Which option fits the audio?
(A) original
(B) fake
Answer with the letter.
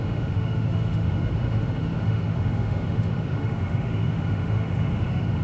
B